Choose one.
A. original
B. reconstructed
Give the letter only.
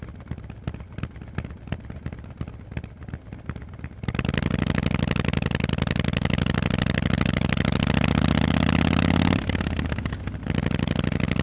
A